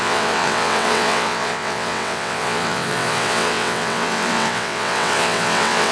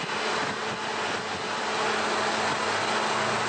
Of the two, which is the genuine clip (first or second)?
second